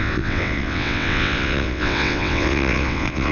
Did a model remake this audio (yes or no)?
yes